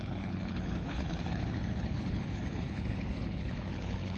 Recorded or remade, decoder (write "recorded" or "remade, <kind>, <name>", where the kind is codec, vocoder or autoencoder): remade, codec, HILCodec